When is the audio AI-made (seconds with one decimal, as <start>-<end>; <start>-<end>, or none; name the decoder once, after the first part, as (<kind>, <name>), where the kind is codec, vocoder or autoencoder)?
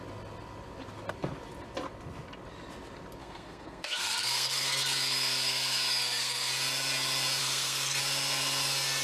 3.2-6.5 (codec, SNAC); 7.4-8.0